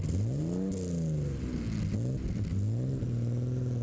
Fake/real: real